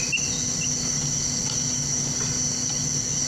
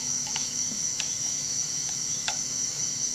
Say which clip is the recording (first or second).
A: first